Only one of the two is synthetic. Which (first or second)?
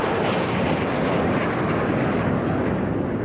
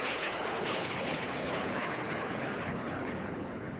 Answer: second